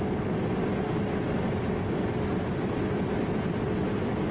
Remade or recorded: recorded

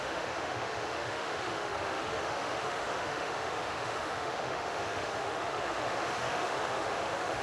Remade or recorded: remade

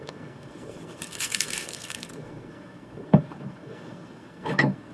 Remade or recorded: remade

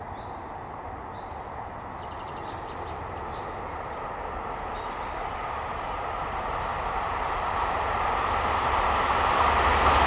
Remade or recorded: recorded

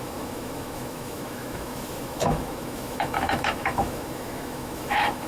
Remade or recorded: remade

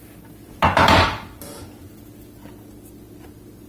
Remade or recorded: recorded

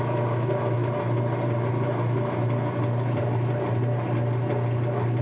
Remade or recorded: recorded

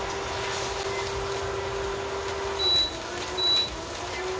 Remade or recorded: recorded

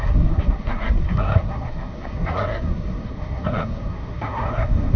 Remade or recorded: remade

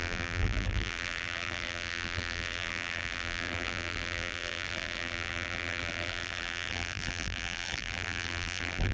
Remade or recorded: remade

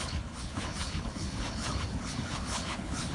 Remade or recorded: remade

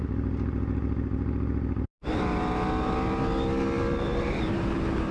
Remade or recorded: recorded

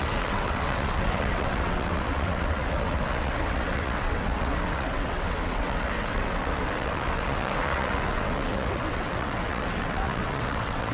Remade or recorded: remade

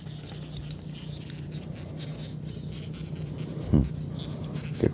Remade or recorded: recorded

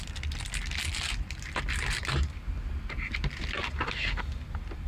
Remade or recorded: recorded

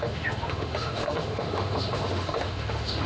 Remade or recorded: remade